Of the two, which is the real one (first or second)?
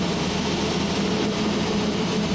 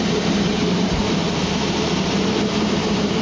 first